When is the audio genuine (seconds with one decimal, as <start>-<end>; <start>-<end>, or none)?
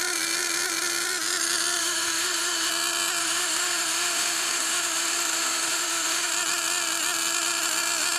0.0-1.8; 2.7-3.2; 6.3-8.2